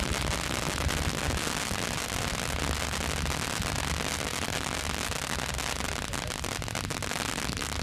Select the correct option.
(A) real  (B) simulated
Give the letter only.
A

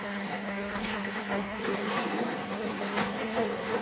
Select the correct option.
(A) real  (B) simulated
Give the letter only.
B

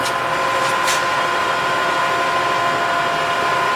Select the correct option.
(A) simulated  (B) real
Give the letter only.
B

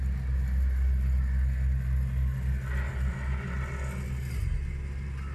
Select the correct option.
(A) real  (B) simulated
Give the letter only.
A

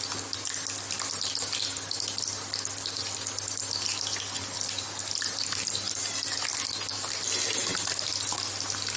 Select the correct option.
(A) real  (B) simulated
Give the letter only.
A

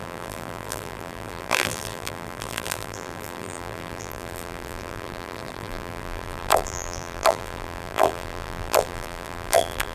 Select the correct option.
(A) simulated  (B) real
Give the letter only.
A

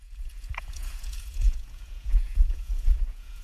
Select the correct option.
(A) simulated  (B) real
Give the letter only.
A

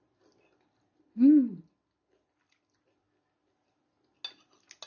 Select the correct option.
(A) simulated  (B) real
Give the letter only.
B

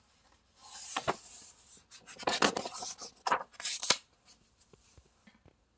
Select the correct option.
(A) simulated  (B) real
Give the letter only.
B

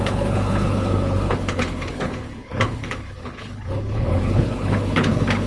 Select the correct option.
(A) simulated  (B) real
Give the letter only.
A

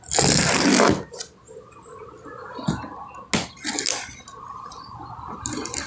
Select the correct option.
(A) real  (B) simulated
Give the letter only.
A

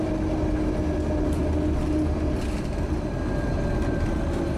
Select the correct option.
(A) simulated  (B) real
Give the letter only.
B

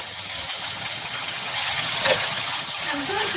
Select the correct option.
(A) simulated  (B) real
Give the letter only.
A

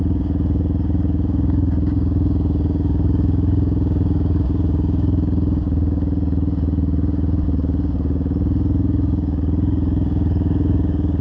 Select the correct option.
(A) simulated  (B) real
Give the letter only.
A